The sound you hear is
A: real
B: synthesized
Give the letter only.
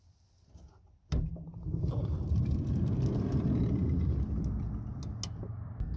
A